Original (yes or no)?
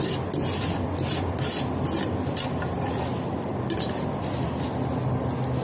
yes